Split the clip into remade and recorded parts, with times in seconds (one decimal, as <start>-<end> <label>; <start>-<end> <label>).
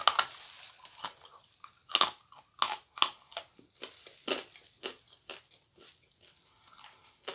0.0-7.3 recorded